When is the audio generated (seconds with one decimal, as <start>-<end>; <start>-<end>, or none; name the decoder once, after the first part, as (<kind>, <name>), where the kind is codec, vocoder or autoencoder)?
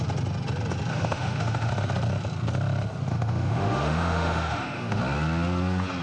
0.9-1.7 (autoencoder, DAC-VAE); 3.1-5.0